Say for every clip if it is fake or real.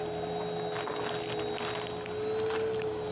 real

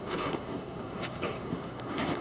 fake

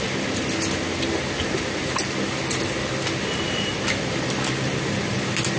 real